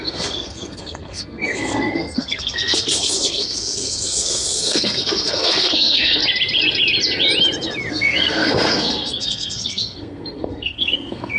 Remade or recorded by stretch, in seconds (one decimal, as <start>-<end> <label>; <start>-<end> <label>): 0.0-6.2 remade; 6.2-7.9 recorded; 7.9-11.4 remade